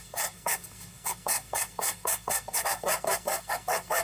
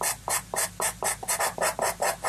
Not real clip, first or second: first